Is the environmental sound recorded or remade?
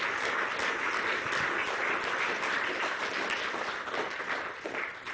recorded